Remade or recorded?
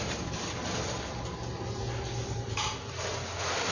recorded